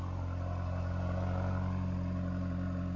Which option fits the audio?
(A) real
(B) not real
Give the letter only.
A